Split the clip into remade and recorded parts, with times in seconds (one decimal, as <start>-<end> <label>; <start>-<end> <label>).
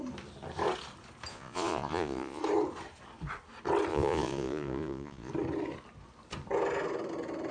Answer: 0.0-1.3 recorded; 1.3-2.4 remade; 2.4-3.9 recorded; 3.9-5.3 remade; 5.3-7.5 recorded